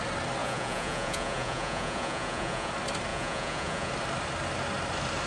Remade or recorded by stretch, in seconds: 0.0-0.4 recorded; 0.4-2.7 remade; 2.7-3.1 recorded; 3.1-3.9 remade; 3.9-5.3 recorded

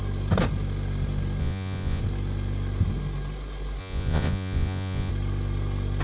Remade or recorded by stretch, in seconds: 0.0-1.4 recorded; 1.4-2.0 remade; 2.0-3.8 recorded; 3.8-5.1 remade; 5.1-6.0 recorded

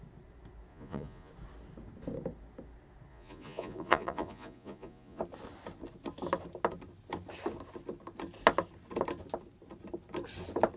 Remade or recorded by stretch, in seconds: 0.0-0.7 recorded; 0.7-1.3 remade; 1.3-3.1 recorded; 3.1-5.2 remade; 5.2-10.8 recorded

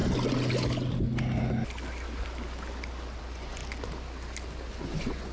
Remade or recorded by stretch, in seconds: 0.0-3.2 recorded; 3.2-3.6 remade; 3.6-4.7 recorded; 4.7-5.3 remade

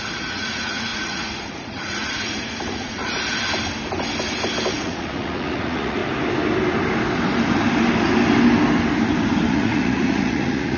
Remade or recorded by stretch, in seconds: 0.0-3.0 remade; 3.0-4.7 recorded; 4.7-6.0 remade; 6.0-9.5 recorded; 9.5-10.8 remade

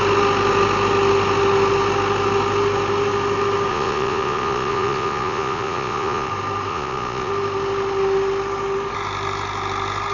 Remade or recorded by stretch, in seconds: 0.0-3.7 recorded; 3.7-6.3 remade; 6.3-6.7 recorded; 6.7-7.3 remade; 7.3-10.1 recorded

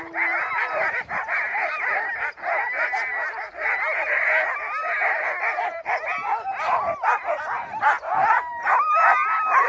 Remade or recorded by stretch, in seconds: 0.0-9.7 recorded

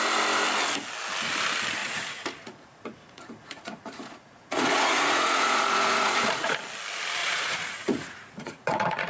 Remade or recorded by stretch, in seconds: 0.0-1.8 recorded; 1.8-6.6 remade; 6.6-7.2 recorded; 7.2-9.1 remade